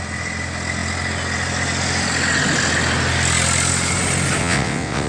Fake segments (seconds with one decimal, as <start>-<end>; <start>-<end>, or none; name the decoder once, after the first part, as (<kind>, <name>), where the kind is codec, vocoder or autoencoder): 4.4-5.1 (vocoder, WaveNeXt)